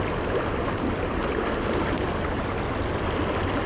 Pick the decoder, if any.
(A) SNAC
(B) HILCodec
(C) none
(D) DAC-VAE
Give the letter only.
C